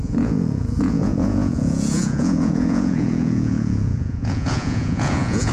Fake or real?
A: fake